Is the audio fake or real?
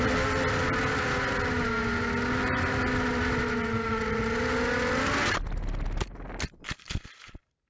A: real